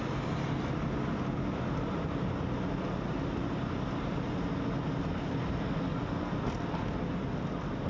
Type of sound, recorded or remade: recorded